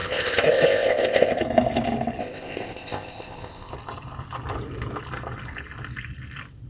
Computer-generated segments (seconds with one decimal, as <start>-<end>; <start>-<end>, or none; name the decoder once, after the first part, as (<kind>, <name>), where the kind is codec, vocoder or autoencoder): 0.0-1.4 (codec, ZipCodec); 2.2-3.7